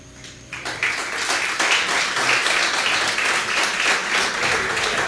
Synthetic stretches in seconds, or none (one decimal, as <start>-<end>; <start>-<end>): 0.0-4.0